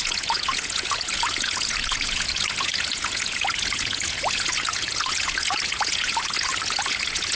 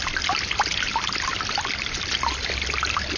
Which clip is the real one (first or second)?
second